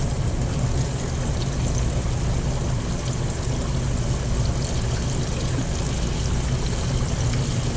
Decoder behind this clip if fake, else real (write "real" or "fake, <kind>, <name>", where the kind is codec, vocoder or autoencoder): real